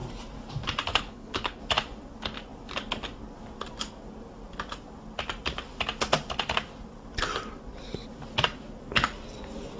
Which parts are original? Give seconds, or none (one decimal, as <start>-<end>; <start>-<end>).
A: 0.0-0.9; 1.6-9.8